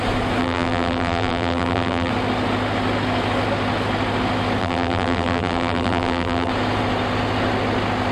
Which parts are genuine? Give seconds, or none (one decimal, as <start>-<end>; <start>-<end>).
0.0-0.4; 2.1-4.6; 6.5-8.1

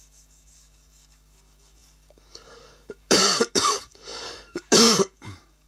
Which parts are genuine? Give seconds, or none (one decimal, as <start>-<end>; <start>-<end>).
none

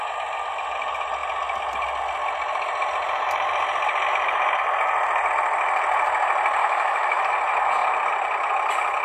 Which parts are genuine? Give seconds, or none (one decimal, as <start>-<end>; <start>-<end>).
0.0-6.6; 7.2-9.0